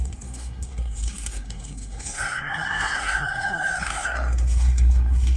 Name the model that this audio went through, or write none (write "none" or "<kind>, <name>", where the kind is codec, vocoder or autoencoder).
codec, SNAC